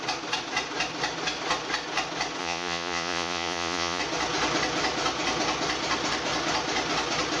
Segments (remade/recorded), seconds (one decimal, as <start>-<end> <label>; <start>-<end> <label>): 0.0-2.4 recorded; 2.4-4.0 remade; 4.0-7.4 recorded